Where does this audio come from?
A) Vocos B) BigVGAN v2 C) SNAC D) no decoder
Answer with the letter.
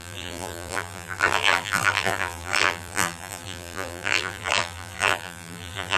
B